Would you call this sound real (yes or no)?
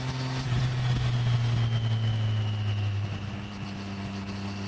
yes